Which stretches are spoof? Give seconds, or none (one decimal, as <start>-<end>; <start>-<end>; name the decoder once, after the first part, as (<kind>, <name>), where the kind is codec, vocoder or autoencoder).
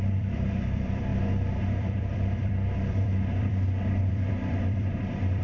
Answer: 0.0-5.4 (vocoder, BigVGAN v2)